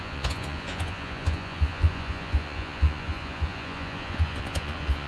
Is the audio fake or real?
fake